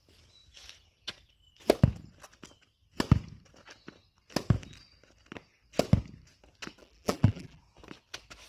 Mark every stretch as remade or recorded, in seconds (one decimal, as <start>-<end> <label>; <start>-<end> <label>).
0.0-6.8 recorded; 6.8-7.6 remade; 7.6-8.5 recorded